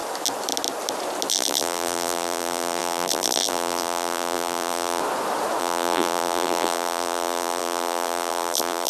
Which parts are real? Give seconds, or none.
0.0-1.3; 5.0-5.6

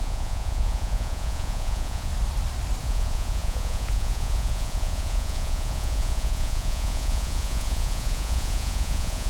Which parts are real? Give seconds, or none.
2.1-2.8

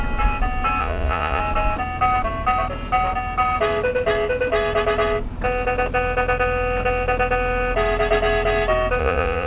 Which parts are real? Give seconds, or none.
0.0-0.8; 1.4-9.0

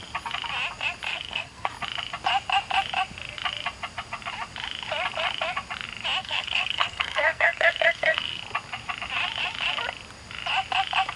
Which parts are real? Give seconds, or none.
0.0-1.1; 1.7-6.2; 8.4-11.2

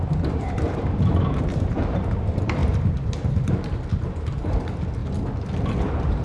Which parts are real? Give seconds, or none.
5.0-5.8

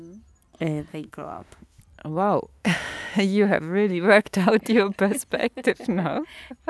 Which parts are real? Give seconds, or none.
0.0-0.9; 1.8-2.5; 4.5-6.7

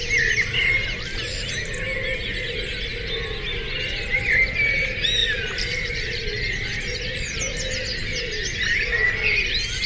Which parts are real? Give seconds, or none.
0.0-2.7; 4.0-5.2; 7.4-9.9

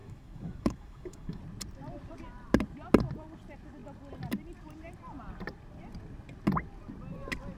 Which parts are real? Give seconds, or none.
1.4-7.6